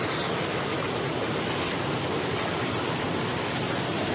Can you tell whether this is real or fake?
real